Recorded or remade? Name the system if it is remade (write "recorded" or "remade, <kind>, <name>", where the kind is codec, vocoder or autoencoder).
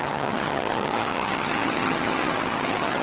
remade, vocoder, HiFi-GAN